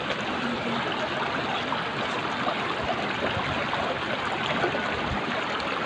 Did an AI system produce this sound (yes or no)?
no